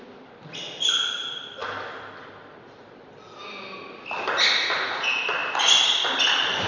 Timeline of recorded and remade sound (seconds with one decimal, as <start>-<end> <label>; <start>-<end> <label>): 0.0-6.7 recorded